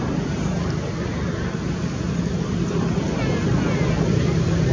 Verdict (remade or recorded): recorded